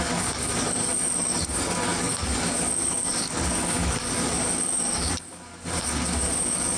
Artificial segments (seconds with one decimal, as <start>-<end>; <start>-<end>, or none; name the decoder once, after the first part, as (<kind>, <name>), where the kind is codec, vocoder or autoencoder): 0.0-0.9 (codec, DAC); 1.4-6.8